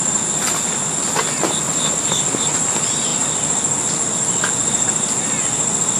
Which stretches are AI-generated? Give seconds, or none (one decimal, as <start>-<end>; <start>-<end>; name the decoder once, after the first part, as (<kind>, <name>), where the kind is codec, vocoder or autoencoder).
none